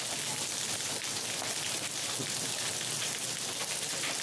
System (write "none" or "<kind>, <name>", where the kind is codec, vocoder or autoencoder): none